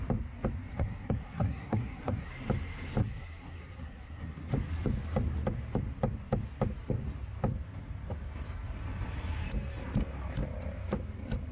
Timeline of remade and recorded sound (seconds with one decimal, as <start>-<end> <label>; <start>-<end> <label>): 0.0-0.7 recorded; 0.7-2.3 remade; 2.3-3.0 recorded; 3.0-4.5 remade; 4.5-11.5 recorded